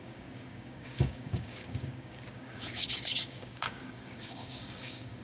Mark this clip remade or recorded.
remade